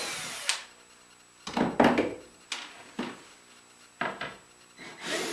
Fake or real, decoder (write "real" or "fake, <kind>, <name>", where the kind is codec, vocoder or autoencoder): real